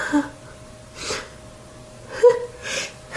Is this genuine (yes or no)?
yes